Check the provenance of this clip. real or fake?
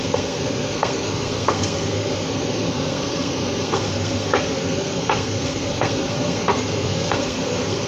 fake